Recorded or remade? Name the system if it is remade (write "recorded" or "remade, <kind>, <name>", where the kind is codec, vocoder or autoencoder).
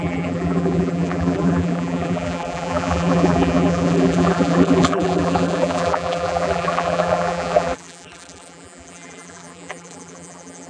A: remade, vocoder, BigVGAN v2